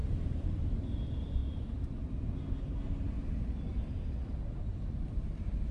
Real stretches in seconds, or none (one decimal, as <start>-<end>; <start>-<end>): 0.7-1.4; 2.2-3.7; 4.3-5.7